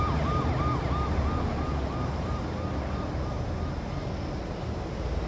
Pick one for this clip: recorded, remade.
recorded